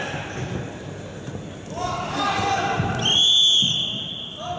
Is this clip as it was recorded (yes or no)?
yes